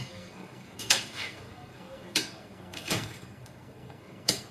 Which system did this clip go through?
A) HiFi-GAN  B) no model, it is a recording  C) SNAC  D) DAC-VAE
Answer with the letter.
C